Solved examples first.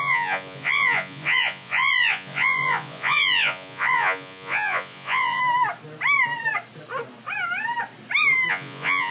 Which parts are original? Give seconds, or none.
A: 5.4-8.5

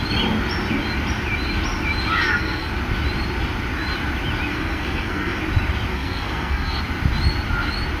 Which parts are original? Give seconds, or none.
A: 0.0-2.2; 2.7-4.5; 5.4-5.9; 6.8-8.0

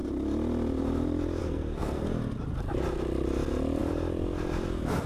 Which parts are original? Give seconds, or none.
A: 0.0-1.4; 2.0-5.1